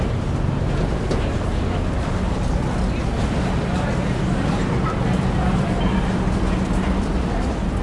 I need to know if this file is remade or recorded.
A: recorded